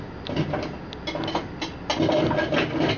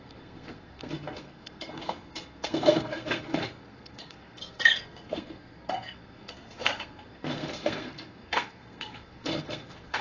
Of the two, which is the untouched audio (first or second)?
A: first